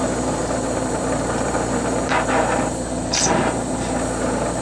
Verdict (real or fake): fake